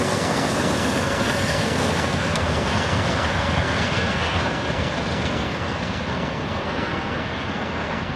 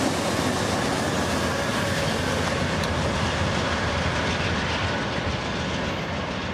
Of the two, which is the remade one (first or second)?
first